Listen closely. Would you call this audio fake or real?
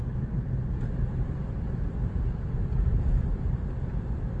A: real